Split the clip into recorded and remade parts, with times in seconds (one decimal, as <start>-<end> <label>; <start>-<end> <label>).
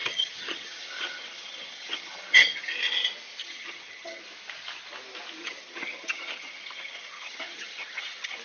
0.0-2.7 remade; 2.7-3.4 recorded; 3.4-4.2 remade; 4.2-5.4 recorded; 5.4-8.4 remade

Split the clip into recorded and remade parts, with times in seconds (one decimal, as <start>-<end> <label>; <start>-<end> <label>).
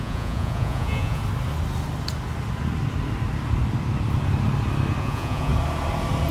0.0-1.2 remade; 1.2-5.0 recorded; 5.0-5.5 remade; 5.5-6.3 recorded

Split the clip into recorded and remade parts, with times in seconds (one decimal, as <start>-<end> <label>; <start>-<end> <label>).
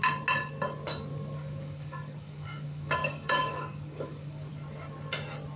0.0-1.1 recorded; 1.1-4.5 remade; 4.5-5.6 recorded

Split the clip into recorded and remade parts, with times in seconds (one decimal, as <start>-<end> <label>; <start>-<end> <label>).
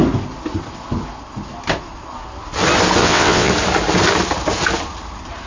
0.0-3.0 recorded; 3.0-3.5 remade; 3.5-5.5 recorded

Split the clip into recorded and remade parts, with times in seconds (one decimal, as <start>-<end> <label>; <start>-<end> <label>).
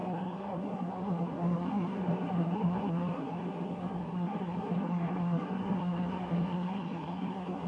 0.0-7.7 remade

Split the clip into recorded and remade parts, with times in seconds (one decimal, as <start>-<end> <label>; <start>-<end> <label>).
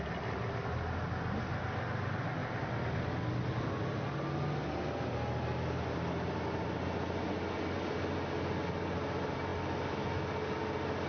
0.0-11.1 recorded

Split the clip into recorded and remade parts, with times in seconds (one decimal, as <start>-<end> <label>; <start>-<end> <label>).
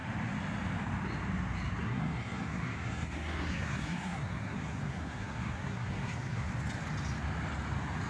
0.0-1.8 recorded; 1.8-6.5 remade; 6.5-8.1 recorded